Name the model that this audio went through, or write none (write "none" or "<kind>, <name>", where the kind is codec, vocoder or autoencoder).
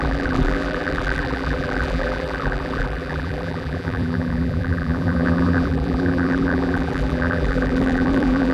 vocoder, BigVGAN v2